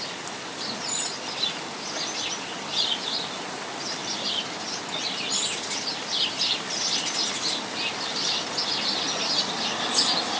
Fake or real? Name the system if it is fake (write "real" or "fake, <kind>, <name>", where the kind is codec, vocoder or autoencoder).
real